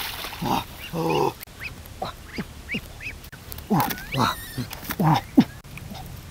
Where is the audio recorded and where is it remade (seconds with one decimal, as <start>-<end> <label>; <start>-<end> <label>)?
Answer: 0.0-6.3 recorded